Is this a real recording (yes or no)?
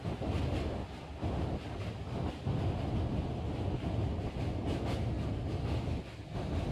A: yes